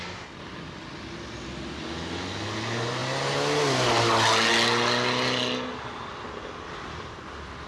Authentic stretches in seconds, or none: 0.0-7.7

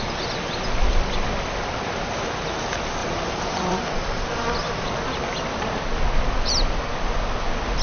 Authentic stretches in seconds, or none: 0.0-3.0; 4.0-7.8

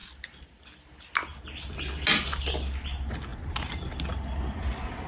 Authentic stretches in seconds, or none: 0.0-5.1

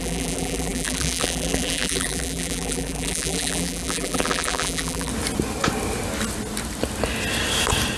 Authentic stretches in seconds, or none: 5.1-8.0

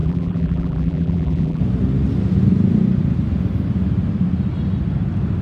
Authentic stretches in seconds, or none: 1.6-5.4